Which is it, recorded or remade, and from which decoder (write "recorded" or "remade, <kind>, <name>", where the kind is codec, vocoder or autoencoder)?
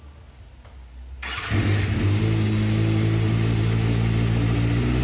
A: recorded